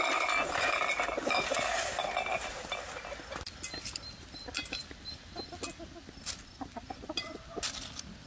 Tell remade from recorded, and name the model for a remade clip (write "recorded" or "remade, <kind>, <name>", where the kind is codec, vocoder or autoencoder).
recorded